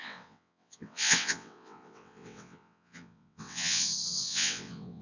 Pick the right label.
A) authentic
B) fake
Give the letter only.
B